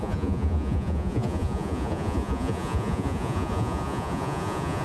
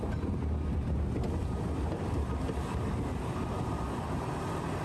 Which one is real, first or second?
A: second